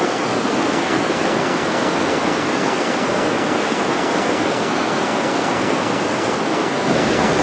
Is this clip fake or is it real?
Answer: fake